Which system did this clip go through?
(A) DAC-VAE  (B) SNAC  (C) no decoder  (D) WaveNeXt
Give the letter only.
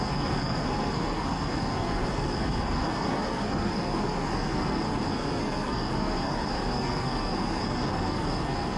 B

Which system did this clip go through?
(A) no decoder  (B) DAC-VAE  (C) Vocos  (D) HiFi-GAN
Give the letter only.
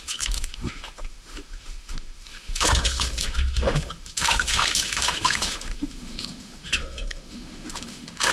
B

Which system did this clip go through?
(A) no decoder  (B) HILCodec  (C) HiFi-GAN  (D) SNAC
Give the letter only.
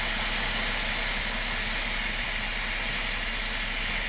A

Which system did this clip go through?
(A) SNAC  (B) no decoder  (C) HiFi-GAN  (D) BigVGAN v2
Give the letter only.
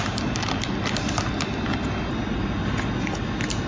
B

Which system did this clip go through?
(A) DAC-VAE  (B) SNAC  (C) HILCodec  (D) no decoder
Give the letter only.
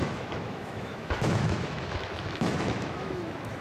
A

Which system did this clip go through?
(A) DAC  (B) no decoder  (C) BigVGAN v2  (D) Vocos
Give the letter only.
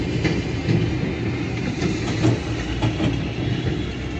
B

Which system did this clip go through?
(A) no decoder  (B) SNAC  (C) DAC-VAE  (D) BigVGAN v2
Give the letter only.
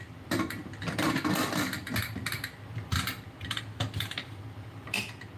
A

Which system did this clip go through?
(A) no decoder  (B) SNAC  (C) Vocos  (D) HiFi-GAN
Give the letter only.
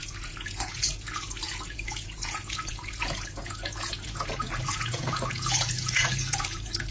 C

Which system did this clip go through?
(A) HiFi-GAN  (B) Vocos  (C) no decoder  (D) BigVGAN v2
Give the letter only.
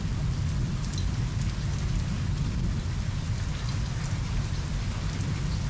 C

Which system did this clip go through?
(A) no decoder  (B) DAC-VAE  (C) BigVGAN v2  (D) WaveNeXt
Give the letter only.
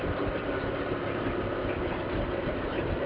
A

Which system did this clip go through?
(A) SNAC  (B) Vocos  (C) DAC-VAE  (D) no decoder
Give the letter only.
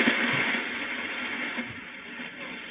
B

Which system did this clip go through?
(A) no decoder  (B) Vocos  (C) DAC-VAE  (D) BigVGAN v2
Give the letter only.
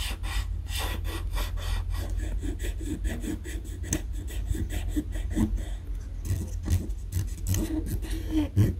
A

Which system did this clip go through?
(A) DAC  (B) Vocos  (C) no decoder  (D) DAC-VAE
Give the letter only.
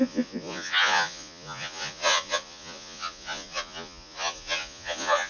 B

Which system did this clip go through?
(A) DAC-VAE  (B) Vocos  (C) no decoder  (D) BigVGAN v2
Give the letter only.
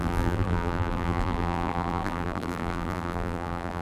D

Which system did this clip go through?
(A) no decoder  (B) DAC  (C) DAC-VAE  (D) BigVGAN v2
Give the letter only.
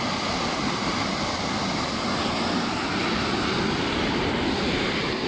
A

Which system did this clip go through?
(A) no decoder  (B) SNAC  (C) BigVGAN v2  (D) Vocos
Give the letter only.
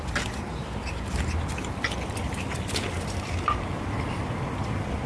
C